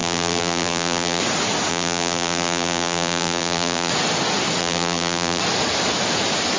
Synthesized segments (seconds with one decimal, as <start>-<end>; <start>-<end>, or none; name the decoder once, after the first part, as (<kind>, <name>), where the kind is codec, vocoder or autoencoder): 0.0-1.2 (vocoder, BigVGAN v2); 1.7-3.9; 4.6-5.4